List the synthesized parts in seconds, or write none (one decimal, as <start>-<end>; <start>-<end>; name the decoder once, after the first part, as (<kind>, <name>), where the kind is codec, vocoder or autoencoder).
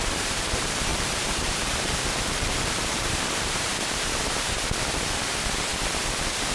0.9-4.5 (vocoder, BigVGAN v2)